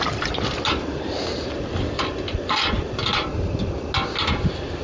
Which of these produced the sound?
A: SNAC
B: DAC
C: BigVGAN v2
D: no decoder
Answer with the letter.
D